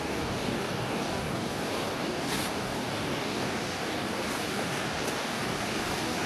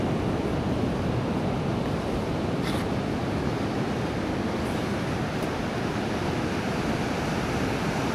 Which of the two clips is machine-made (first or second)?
first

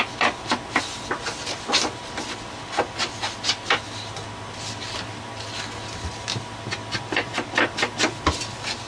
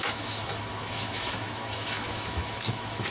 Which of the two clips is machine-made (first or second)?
second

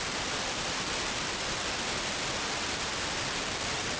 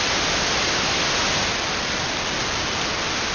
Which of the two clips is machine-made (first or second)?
first